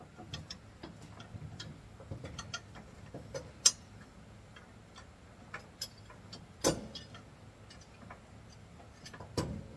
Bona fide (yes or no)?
yes